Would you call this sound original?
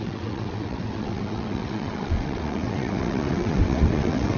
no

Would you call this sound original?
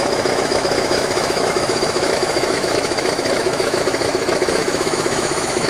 no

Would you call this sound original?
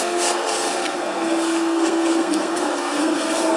no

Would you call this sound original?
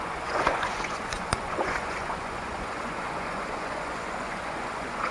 no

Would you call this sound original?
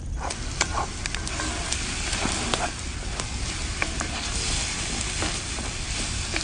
yes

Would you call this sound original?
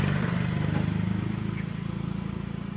yes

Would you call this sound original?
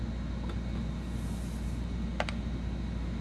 yes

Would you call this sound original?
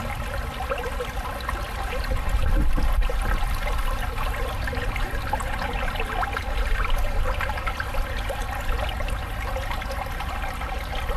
yes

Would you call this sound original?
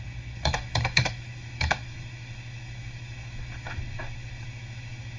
no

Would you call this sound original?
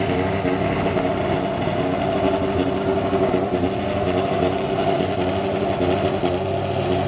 yes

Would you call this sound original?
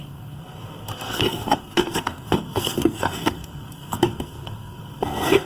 no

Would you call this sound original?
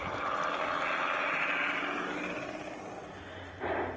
yes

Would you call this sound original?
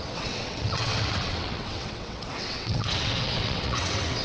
no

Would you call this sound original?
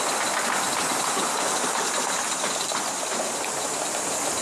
yes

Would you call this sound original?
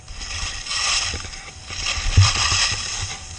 no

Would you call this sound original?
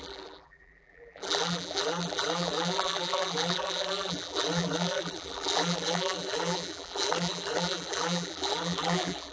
no